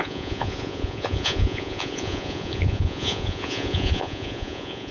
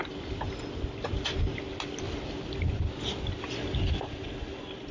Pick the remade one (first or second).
first